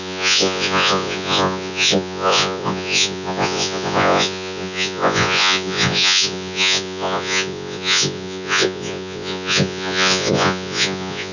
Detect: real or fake fake